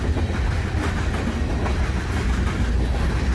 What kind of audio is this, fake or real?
real